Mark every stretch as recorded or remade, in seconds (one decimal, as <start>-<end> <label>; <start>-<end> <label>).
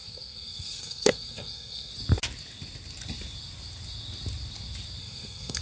0.0-1.9 remade; 1.9-5.0 recorded; 5.0-5.6 remade